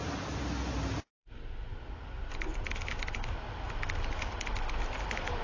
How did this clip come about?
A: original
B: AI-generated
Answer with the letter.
A